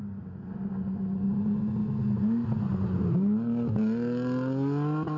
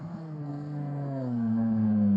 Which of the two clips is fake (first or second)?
second